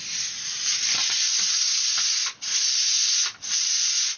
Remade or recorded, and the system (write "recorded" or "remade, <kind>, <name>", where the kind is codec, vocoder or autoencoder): recorded